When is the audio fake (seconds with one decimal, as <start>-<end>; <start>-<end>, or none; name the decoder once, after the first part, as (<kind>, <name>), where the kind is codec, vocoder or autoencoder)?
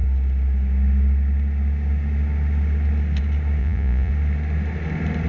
3.6-4.1 (vocoder, Vocos)